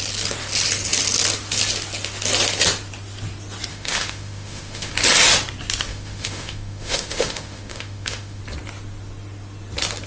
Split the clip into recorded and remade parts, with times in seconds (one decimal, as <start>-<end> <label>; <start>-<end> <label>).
0.0-3.7 recorded; 3.7-4.9 remade; 4.9-5.9 recorded; 5.9-8.4 remade; 8.4-10.1 recorded